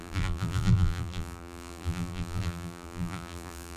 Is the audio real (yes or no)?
no